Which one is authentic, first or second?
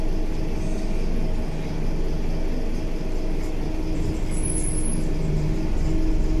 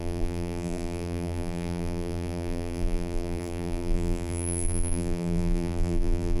first